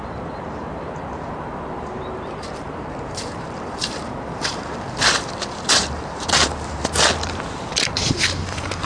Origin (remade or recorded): remade